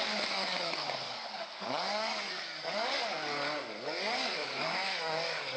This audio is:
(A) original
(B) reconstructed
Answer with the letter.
B